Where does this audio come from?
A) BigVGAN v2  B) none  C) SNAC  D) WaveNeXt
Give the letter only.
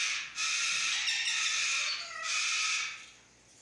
B